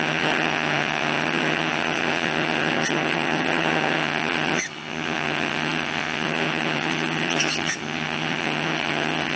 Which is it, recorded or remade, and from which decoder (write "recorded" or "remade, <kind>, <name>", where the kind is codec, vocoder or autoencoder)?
remade, vocoder, HiFi-GAN